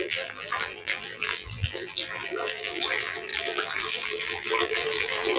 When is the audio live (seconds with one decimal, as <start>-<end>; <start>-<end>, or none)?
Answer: none